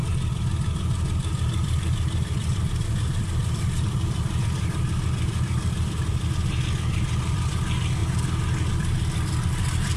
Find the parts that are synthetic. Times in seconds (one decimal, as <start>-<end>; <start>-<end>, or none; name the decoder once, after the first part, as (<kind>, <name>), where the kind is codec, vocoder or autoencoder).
0.0-8.0 (vocoder, BigVGAN v2); 8.7-10.0